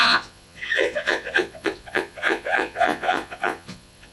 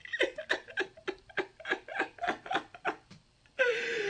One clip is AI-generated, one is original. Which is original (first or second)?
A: second